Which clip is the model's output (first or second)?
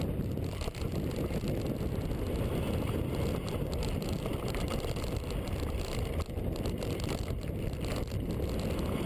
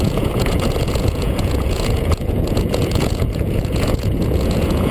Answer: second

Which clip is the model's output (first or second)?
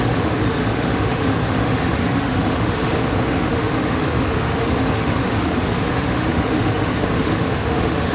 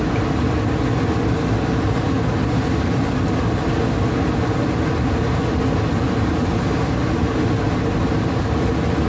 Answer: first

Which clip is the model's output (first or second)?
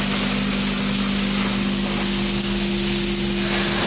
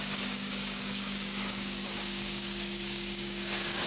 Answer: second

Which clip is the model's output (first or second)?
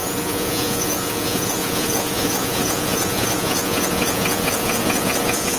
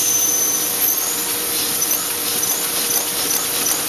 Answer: first